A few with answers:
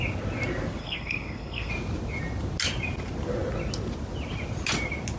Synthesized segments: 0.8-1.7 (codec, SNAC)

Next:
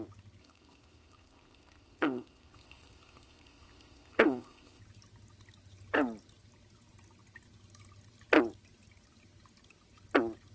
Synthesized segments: 0.4-4.8 (codec, ZipCodec)

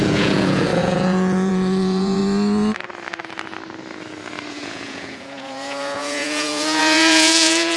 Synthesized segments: 0.0-2.2 (vocoder, Vocos); 4.5-7.8

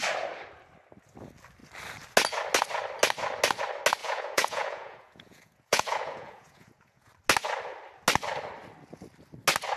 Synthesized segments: 4.0-7.1 (vocoder, Vocos)

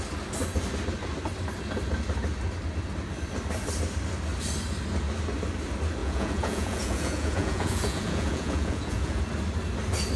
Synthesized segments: 6.0-9.2 (vocoder, Vocos)

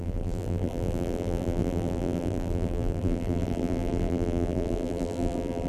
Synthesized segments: 0.0-5.7 (vocoder, BigVGAN v2)